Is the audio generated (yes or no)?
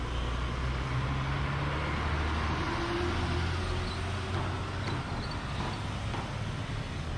no